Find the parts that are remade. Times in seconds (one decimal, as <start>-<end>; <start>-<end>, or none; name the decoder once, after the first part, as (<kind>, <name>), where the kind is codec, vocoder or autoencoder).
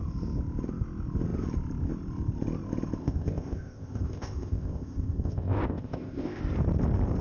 3.0-6.4 (codec, ZipCodec)